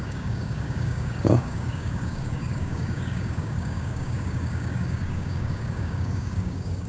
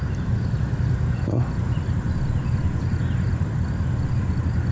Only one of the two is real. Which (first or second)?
second